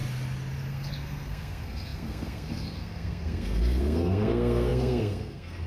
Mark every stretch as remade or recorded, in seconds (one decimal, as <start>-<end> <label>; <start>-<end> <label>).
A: 0.0-0.7 recorded; 0.7-5.7 remade